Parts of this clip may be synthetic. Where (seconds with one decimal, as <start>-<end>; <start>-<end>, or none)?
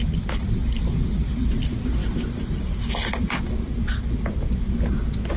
2.0-4.2